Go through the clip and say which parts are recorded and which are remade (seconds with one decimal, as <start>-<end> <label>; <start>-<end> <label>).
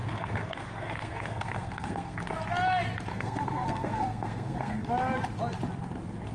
0.0-2.2 remade; 2.2-3.1 recorded; 3.1-4.9 remade; 4.9-6.3 recorded